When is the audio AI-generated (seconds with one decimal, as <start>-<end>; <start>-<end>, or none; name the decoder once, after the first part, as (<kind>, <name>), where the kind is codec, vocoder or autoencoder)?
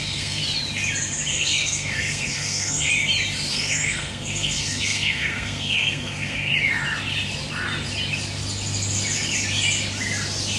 0.0-0.4 (codec, SNAC); 1.3-2.9; 3.5-6.5